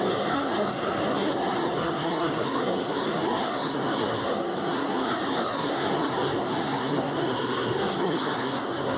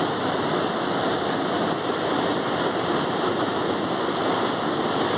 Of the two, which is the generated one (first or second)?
first